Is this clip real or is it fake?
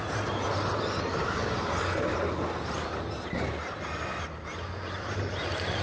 real